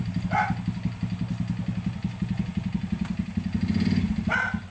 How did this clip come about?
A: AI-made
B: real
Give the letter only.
B